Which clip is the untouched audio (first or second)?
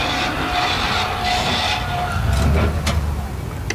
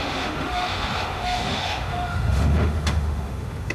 first